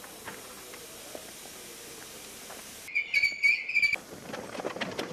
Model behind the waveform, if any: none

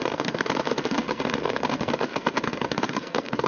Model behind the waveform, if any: codec, SNAC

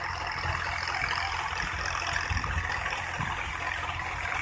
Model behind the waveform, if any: none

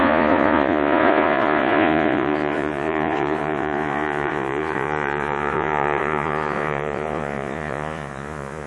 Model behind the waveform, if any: vocoder, Vocos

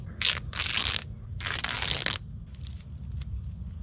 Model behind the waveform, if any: none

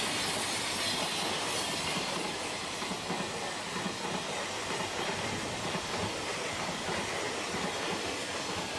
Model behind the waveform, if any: none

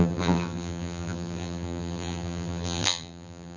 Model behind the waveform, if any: vocoder, BigVGAN v2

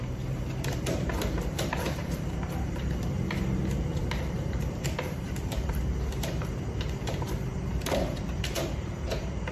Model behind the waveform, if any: vocoder, BigVGAN v2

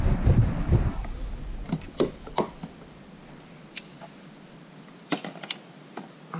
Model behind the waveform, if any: none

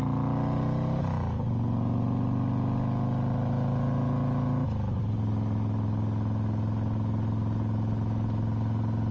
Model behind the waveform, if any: none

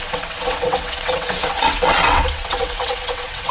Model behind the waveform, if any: vocoder, WaveNeXt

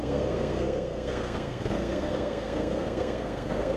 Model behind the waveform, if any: codec, SNAC